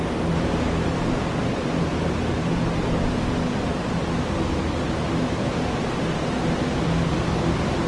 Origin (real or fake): real